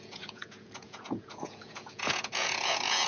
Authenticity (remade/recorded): remade